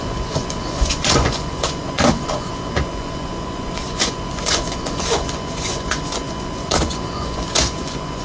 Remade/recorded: remade